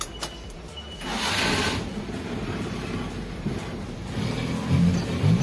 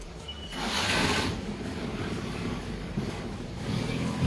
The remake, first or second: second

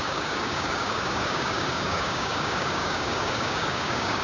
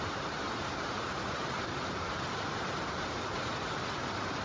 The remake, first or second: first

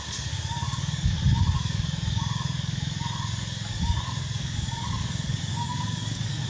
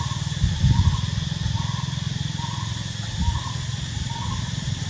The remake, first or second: first